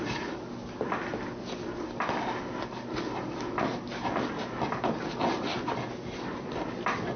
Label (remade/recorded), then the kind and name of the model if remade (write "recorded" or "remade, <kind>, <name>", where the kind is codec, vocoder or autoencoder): recorded